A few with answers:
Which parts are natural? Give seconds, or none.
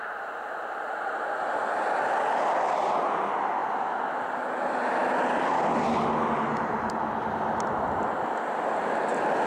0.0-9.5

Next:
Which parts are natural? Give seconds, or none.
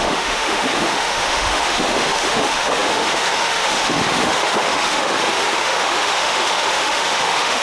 none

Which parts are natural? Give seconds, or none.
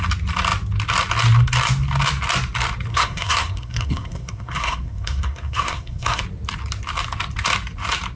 0.0-2.9; 6.2-8.2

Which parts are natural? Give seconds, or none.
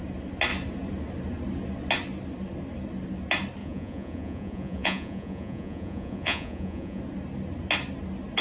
0.0-3.6; 7.0-8.4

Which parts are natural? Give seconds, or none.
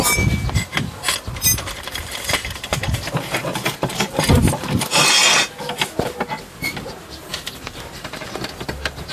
0.0-9.1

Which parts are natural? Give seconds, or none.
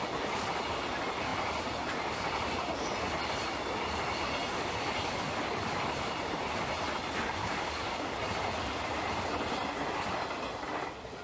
0.0-7.4; 8.2-11.2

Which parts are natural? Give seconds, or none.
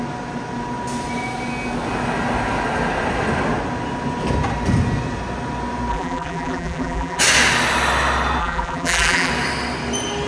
0.0-5.9; 7.2-8.4; 9.3-10.3